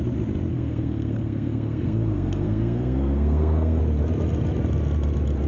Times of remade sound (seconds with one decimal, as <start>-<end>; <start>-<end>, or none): 0.5-3.8